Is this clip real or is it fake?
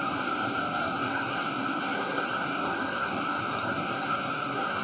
fake